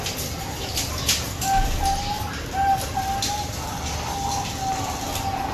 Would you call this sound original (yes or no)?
yes